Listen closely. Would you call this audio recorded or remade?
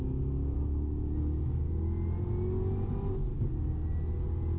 recorded